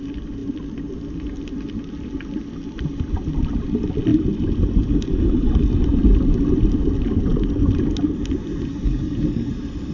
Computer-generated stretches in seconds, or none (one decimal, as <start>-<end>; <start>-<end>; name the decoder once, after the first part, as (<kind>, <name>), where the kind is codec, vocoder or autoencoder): 8.7-9.5 (codec, DAC)